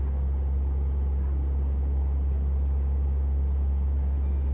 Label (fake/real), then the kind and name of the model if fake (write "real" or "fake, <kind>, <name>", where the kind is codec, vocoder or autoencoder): real